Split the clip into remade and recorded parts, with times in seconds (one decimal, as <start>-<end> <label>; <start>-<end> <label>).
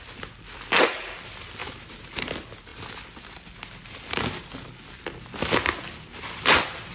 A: 0.0-1.6 recorded; 1.6-2.3 remade; 2.3-6.9 recorded